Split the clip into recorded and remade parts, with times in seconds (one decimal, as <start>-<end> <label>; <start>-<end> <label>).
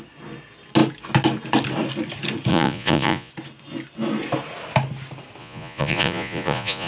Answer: 0.0-2.5 recorded; 2.5-3.3 remade; 3.3-5.4 recorded; 5.4-6.9 remade